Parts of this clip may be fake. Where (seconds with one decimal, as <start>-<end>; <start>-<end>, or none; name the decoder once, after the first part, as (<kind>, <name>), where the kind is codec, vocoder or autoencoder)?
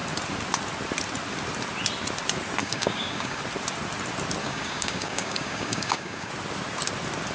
2.6-3.4 (codec, DAC); 4.4-6.3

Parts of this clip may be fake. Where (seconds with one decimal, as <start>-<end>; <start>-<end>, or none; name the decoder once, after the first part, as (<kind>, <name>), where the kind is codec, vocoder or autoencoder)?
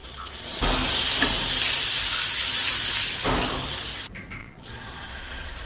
0.0-0.6 (vocoder, Vocos); 4.4-5.7